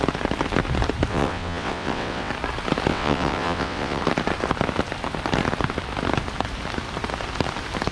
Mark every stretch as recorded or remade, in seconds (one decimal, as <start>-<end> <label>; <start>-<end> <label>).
0.0-1.1 recorded; 1.1-2.3 remade; 2.3-2.9 recorded; 2.9-4.0 remade; 4.0-7.9 recorded